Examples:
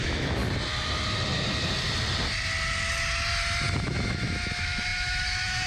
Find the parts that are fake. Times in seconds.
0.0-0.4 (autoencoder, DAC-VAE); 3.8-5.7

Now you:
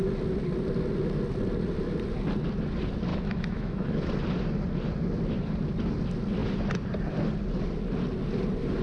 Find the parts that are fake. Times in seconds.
3.1-4.1 (autoencoder, DAC-VAE)

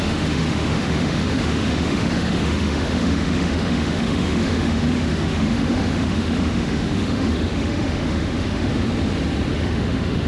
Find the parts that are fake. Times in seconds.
0.0-8.7 (autoencoder, DAC-VAE); 9.5-10.3